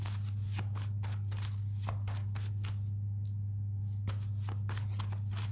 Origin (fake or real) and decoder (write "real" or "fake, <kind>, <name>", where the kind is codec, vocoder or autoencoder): real